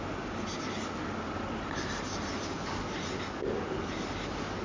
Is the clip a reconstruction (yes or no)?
no